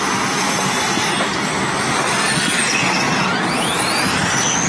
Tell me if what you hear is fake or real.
real